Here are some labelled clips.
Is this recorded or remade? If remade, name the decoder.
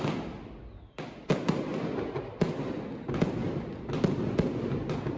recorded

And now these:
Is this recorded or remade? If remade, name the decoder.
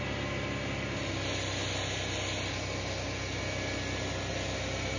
recorded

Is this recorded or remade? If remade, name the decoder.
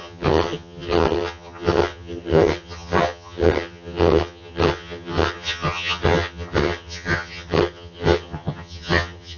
remade, vocoder, HiFi-GAN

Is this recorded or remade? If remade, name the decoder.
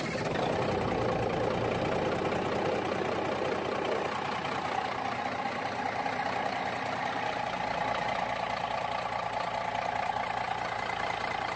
recorded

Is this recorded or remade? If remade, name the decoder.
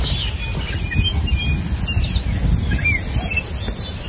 recorded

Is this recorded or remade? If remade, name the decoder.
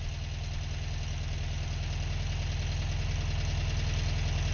recorded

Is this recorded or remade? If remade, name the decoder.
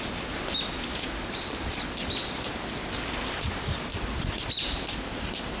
recorded